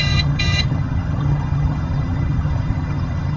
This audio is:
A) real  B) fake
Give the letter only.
B